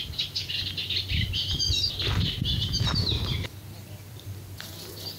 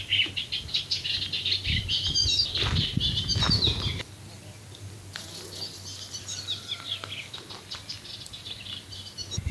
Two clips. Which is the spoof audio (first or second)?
first